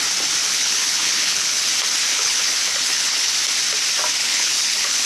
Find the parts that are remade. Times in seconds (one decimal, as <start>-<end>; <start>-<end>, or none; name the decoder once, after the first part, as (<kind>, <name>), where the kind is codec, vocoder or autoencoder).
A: 0.4-1.7 (codec, HILCodec); 2.1-3.3; 4.2-5.1